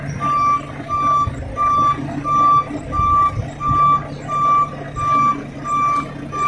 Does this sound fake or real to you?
real